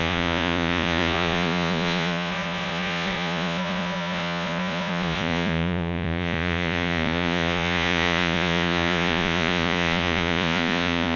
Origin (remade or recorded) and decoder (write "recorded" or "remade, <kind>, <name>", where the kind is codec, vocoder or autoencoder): remade, vocoder, Vocos